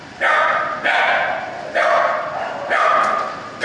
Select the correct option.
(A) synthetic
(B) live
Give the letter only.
B